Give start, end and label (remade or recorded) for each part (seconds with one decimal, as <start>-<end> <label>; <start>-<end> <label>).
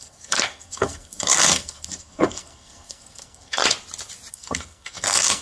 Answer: 0.0-3.6 remade; 3.6-4.3 recorded; 4.3-5.4 remade